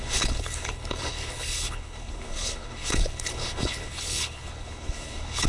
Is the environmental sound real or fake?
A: fake